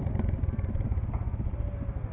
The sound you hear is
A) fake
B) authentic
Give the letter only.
B